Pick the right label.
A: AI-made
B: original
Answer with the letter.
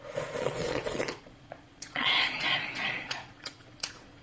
A